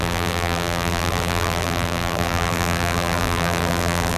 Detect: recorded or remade remade